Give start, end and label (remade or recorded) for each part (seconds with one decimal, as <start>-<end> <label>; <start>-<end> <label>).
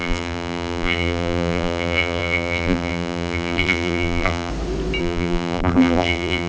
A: 0.0-4.5 remade; 4.5-5.0 recorded; 5.0-6.5 remade